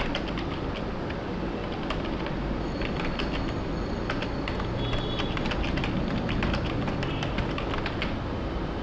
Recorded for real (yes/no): yes